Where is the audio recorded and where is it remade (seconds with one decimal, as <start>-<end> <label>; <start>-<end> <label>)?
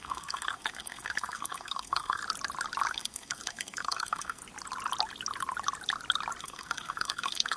0.0-2.2 remade; 2.2-2.9 recorded; 2.9-4.4 remade; 4.4-6.4 recorded; 6.4-7.6 remade